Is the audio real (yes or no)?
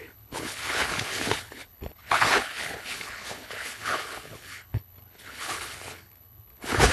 no